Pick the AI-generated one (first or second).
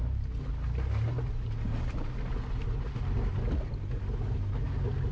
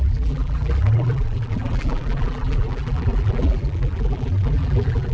second